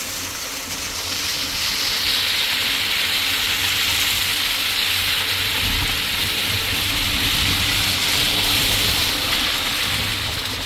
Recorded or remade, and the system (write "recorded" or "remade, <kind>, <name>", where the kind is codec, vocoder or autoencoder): recorded